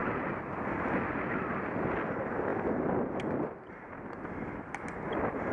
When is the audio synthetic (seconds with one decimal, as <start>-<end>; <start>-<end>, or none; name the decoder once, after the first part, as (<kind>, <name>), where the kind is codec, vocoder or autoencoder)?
none